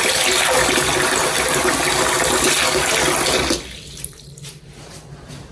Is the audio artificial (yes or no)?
no